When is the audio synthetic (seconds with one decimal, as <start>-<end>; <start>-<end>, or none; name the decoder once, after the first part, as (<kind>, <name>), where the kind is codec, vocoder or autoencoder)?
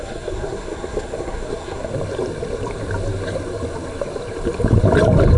0.0-1.9 (codec, SNAC)